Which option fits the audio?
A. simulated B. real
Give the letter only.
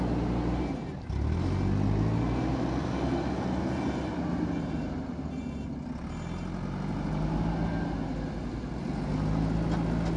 B